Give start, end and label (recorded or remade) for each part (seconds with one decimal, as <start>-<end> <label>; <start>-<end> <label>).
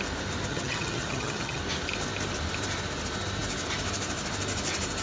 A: 0.0-0.5 recorded; 0.5-1.6 remade; 1.6-5.0 recorded